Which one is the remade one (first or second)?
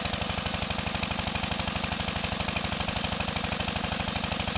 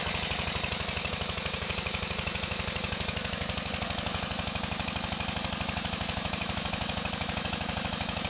second